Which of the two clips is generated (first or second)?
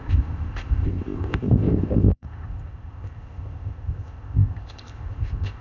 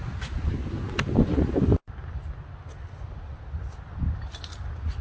first